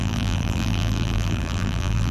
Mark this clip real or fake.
fake